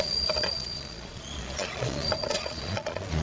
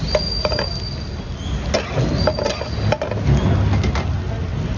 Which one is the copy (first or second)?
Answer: first